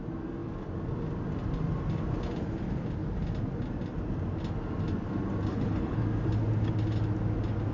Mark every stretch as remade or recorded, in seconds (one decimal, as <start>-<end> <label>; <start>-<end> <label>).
0.0-5.5 recorded; 5.5-6.0 remade; 6.0-7.7 recorded